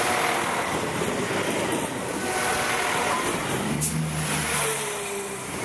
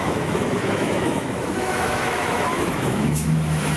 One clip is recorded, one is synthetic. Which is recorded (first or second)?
first